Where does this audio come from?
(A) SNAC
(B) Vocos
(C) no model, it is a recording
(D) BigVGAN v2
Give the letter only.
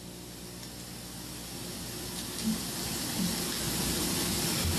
C